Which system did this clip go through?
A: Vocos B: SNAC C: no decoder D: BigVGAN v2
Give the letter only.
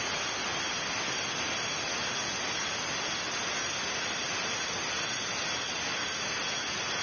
C